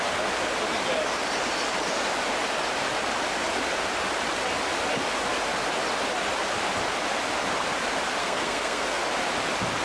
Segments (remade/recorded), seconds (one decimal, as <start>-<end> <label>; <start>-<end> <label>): 0.0-8.2 recorded; 8.2-9.0 remade; 9.0-9.8 recorded